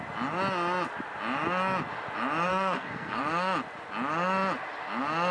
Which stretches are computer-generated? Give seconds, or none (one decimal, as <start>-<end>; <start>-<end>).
2.5-3.2